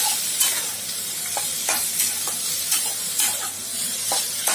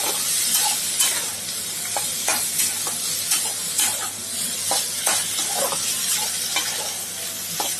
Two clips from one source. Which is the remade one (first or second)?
first